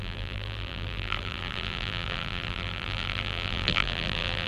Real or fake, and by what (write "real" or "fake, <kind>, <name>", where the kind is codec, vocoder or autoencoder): fake, vocoder, BigVGAN v2